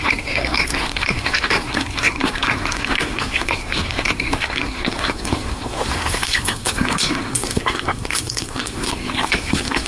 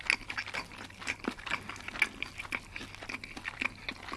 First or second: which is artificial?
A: first